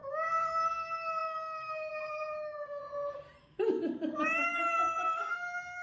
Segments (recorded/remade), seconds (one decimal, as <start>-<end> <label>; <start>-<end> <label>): 0.0-2.8 remade; 2.8-3.4 recorded; 3.4-5.8 remade